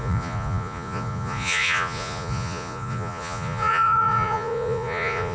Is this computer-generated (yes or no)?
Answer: yes